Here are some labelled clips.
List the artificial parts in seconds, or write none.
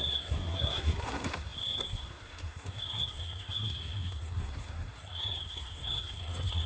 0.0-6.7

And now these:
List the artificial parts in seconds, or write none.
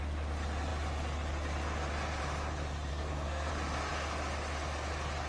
2.9-3.5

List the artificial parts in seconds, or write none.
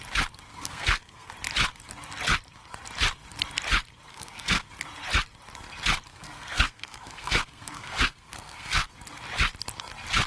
0.5-1.3; 4.1-4.7; 6.1-8.9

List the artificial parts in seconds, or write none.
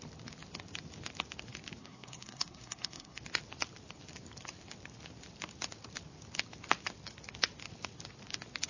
1.8-3.2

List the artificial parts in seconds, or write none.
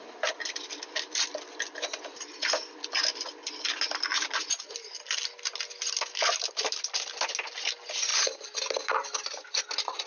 none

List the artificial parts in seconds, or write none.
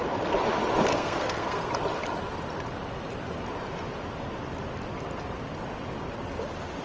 0.9-1.7